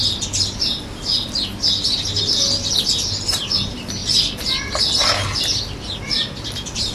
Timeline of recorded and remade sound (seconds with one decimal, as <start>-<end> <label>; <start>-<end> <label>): 0.0-6.9 recorded